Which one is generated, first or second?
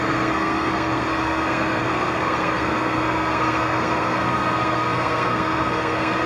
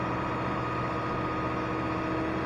first